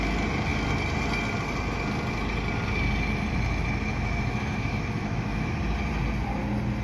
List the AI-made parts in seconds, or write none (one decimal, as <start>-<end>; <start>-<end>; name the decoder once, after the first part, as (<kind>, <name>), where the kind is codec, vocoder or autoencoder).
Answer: 3.9-5.5 (autoencoder, DAC-VAE)